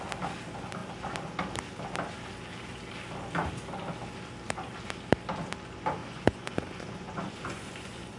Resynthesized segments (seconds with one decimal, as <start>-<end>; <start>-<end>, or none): 6.0-8.2